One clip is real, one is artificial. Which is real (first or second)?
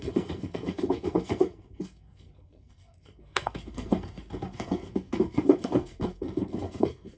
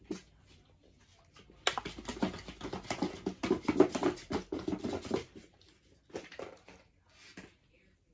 second